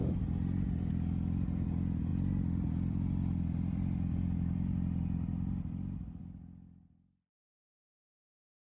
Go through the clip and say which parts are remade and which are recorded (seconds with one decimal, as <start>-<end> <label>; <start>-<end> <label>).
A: 0.0-0.9 remade; 0.9-2.1 recorded; 2.1-6.2 remade; 6.2-8.7 recorded